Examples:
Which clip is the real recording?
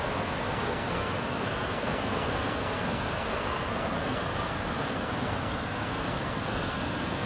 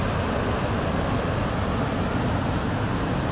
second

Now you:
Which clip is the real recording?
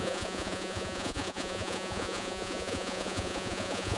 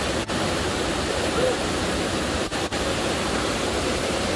second